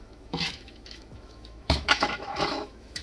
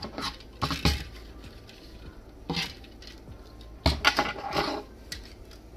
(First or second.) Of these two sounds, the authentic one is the second